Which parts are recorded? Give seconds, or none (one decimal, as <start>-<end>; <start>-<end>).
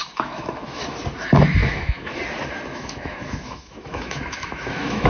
0.8-1.6; 2.2-2.7